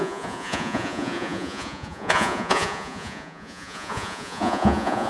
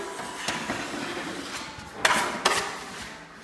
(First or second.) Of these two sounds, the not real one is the first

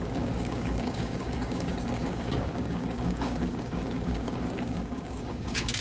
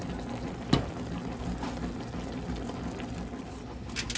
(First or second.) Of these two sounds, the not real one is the first